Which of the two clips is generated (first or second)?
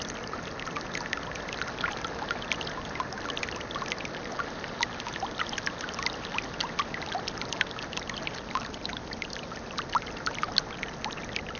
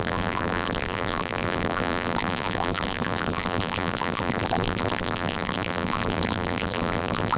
second